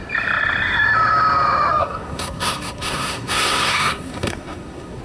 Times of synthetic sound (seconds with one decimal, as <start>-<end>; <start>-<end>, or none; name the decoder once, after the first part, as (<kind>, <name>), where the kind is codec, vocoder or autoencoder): 1.8-5.0 (codec, SNAC)